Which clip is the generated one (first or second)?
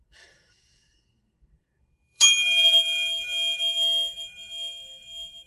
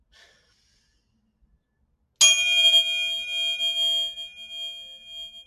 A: first